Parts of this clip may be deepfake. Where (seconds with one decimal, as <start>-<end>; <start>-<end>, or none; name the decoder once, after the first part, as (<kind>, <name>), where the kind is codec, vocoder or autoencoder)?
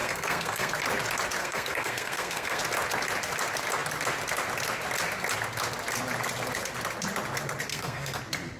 0.0-0.7 (codec, SNAC); 1.4-2.6; 7.7-8.2